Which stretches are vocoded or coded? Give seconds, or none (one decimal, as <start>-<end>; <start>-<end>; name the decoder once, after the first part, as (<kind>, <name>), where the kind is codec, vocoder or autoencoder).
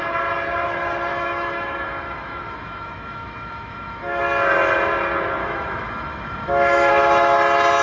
1.1-4.2 (autoencoder, DAC-VAE); 5.4-6.9